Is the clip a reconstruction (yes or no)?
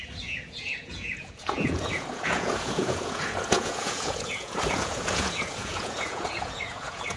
yes